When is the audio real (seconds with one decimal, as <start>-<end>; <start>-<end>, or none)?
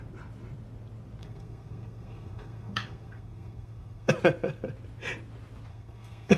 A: 0.0-1.2; 4.1-5.7